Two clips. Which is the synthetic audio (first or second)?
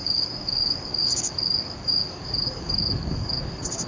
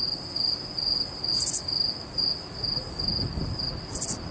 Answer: first